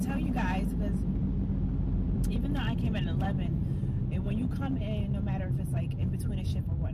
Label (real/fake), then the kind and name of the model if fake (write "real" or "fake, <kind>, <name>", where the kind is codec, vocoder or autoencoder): real